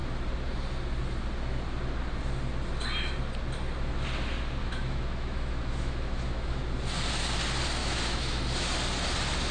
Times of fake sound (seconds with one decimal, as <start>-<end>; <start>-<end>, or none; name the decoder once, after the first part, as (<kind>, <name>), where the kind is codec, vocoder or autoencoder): 4.6-6.6 (autoencoder, DAC-VAE); 7.8-8.4